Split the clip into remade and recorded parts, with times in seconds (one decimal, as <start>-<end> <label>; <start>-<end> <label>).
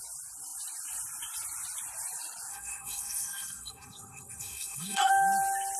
0.0-2.5 recorded; 2.5-5.1 remade; 5.1-5.8 recorded